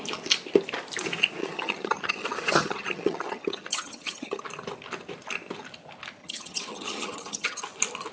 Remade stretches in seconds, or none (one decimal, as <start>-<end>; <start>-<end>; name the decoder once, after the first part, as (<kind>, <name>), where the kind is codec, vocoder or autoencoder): 1.4-4.4 (vocoder, HiFi-GAN); 6.2-7.6